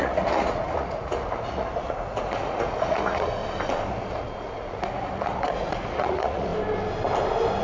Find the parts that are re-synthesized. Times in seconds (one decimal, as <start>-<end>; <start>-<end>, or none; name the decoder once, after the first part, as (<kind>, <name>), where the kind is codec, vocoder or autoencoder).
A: 0.0-3.4 (vocoder, Vocos); 3.9-6.5